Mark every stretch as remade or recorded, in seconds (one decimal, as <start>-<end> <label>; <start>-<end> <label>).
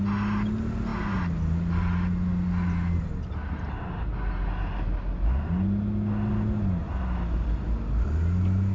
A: 0.0-8.7 recorded